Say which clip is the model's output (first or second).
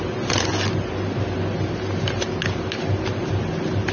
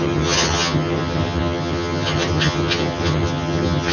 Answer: second